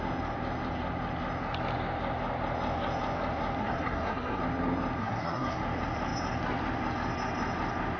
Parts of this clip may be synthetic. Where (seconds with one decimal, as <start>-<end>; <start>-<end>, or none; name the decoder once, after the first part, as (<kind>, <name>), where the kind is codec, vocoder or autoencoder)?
3.6-4.4 (codec, SNAC); 5.0-5.6